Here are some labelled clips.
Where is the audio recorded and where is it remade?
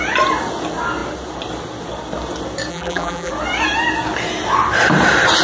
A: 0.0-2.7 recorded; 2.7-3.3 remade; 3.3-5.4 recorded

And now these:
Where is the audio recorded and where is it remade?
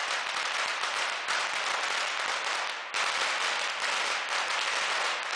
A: 0.0-1.4 remade; 1.4-5.4 recorded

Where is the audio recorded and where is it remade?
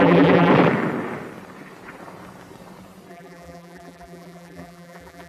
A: 0.0-0.5 remade; 0.5-3.1 recorded; 3.1-5.3 remade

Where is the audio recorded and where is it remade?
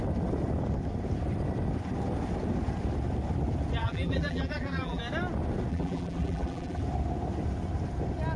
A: 0.0-3.8 recorded; 3.8-5.0 remade; 5.0-5.7 recorded; 5.7-6.8 remade; 6.8-8.4 recorded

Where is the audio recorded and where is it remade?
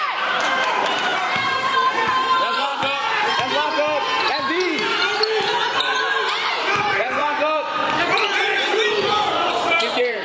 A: 0.0-2.7 remade; 2.7-6.5 recorded; 6.5-10.2 remade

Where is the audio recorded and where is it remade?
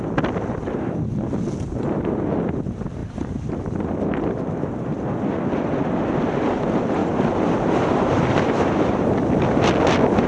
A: 0.0-3.0 recorded; 3.0-3.7 remade; 3.7-7.0 recorded; 7.0-9.1 remade; 9.1-10.3 recorded